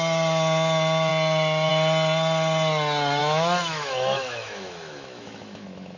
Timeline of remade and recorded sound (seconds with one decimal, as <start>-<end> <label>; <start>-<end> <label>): 0.0-3.2 recorded; 3.2-6.0 remade